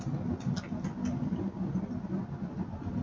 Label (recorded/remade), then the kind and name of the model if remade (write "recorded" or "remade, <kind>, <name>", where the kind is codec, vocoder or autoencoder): recorded